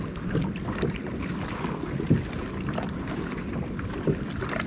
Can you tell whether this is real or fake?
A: real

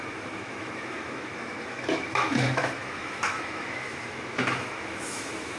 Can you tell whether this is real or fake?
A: fake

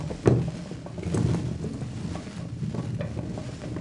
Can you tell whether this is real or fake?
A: real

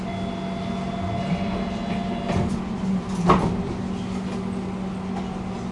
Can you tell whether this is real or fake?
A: real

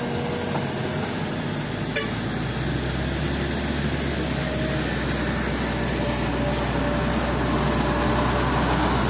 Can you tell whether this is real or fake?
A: real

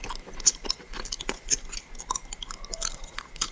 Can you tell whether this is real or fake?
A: real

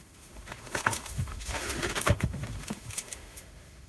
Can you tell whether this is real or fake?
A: fake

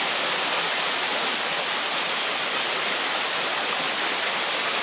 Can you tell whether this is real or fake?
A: real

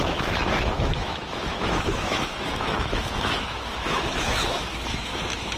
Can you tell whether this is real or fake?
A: fake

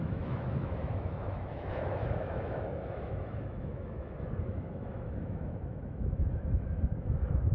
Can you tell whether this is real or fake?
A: fake